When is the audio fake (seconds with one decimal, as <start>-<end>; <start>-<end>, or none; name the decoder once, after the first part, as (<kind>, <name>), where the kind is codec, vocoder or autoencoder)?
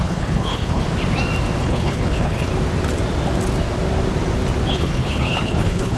0.0-0.8 (codec, HILCodec); 1.6-2.5; 4.7-6.0